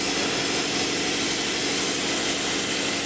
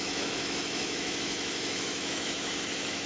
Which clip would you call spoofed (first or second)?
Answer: second